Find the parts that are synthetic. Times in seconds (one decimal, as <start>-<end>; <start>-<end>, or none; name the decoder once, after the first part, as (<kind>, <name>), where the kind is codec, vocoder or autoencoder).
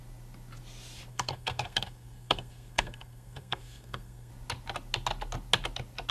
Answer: 1.1-4.3 (codec, SNAC)